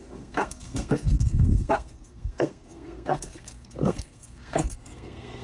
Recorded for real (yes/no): no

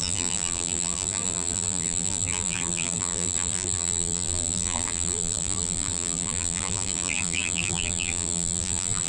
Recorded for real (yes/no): no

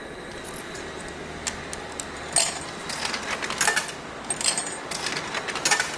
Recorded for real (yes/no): yes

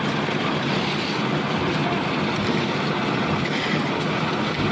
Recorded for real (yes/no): yes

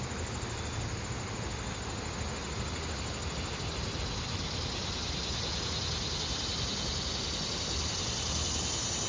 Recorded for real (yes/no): yes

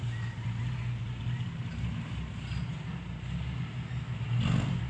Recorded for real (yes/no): yes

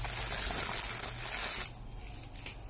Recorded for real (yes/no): yes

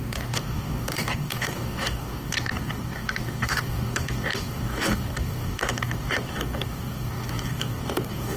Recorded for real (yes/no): no